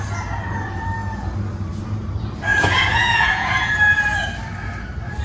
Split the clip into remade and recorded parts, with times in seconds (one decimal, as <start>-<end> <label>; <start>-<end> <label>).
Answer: 0.0-2.5 recorded; 2.5-3.7 remade; 3.7-5.2 recorded